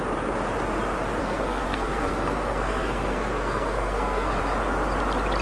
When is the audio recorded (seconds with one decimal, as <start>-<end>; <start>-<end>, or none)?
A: 0.0-1.2; 4.4-5.4